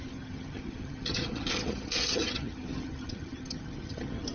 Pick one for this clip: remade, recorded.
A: remade